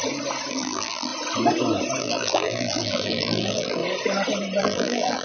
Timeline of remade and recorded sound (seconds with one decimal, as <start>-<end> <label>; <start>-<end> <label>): 0.0-0.5 recorded; 0.5-1.1 remade; 1.1-2.0 recorded; 2.0-3.8 remade; 3.8-4.6 recorded; 4.6-5.2 remade